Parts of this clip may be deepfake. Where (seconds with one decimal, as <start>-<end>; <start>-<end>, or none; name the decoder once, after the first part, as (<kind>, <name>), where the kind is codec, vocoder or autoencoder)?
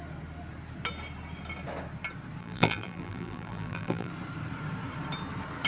2.4-4.1 (vocoder, BigVGAN v2)